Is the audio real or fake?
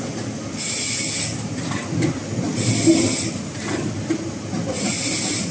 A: real